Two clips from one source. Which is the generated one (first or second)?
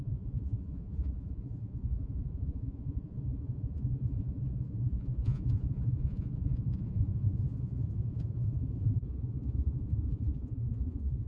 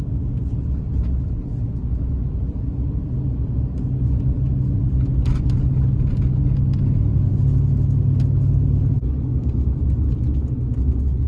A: first